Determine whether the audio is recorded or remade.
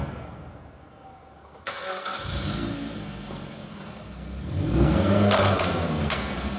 remade